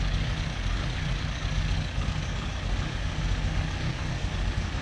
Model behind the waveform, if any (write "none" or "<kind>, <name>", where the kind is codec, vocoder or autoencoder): codec, DAC